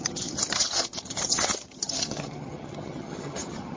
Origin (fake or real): fake